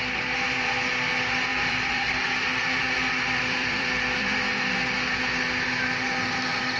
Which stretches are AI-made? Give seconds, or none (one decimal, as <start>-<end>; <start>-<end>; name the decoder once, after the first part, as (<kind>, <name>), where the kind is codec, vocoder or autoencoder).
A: 1.5-4.5 (vocoder, BigVGAN v2)